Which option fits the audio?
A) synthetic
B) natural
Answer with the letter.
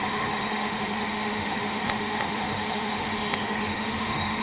A